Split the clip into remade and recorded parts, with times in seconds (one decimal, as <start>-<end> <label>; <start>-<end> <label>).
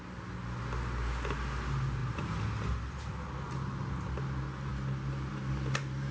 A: 0.0-6.1 recorded